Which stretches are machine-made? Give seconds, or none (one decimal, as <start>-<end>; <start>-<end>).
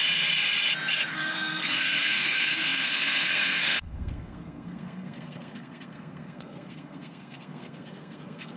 1.1-8.6